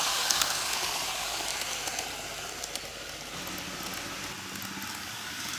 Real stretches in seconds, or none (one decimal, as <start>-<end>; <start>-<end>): 1.5-4.9